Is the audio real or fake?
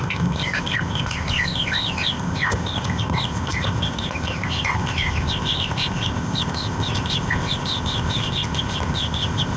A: fake